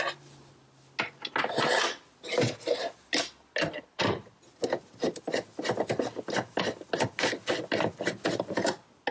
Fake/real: real